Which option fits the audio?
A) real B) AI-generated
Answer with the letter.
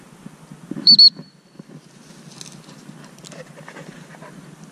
A